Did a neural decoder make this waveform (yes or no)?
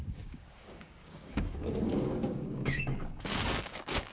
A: yes